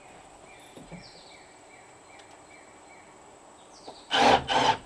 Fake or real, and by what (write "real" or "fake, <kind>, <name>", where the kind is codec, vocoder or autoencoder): real